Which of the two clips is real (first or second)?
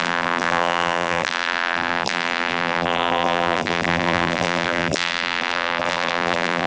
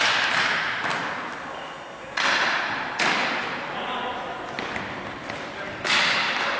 second